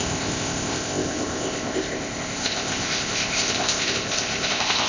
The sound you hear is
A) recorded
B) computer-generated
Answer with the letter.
B